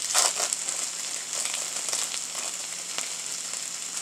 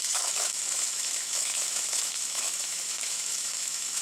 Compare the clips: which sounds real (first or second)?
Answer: first